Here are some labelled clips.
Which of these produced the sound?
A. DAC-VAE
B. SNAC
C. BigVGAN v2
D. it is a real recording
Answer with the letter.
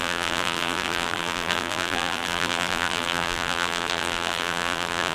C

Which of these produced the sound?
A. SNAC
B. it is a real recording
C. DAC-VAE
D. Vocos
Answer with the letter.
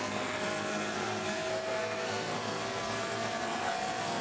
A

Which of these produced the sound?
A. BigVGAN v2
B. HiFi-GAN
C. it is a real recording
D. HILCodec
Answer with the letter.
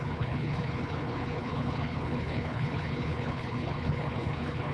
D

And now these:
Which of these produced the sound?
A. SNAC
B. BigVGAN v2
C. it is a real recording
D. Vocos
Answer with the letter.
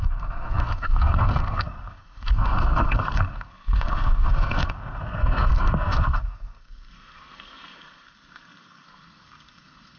A